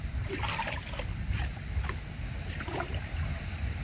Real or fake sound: fake